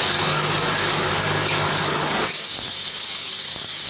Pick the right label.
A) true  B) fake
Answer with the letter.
B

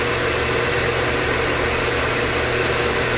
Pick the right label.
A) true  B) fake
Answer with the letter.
A